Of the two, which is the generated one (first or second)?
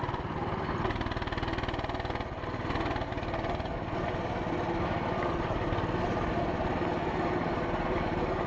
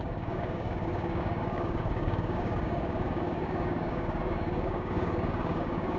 second